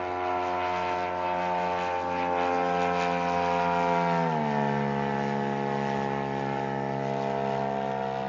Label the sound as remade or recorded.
recorded